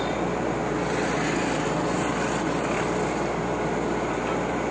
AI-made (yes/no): no